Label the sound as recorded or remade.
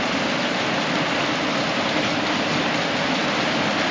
recorded